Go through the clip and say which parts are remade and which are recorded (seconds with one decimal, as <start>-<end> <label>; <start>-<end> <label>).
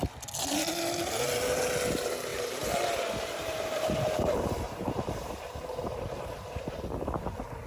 0.0-2.3 recorded; 2.3-6.7 remade; 6.7-7.7 recorded